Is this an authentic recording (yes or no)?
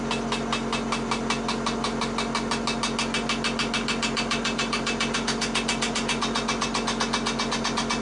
yes